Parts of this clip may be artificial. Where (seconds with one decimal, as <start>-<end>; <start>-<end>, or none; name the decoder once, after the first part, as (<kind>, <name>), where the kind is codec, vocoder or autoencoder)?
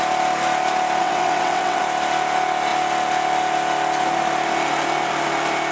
1.0-1.8 (vocoder, WaveNeXt)